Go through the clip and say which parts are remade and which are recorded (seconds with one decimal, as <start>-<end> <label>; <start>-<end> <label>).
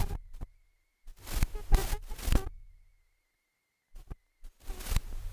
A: 0.0-5.3 recorded